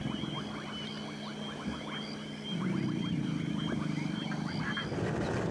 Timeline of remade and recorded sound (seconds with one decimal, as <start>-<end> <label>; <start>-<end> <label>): 0.0-5.5 recorded